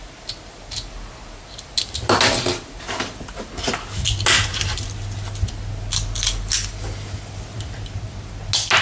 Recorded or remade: recorded